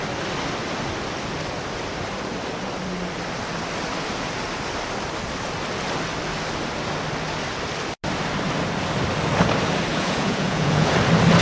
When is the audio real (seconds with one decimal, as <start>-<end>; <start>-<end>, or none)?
0.0-9.9; 10.9-11.4